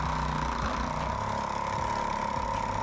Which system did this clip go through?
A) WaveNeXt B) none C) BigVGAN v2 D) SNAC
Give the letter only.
B